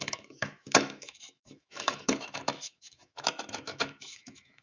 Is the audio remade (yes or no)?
yes